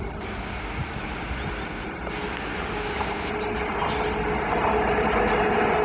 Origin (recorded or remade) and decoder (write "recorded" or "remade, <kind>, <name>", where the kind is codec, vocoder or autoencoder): recorded